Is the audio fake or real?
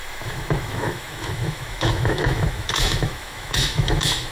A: fake